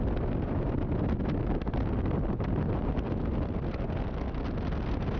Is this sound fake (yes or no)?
no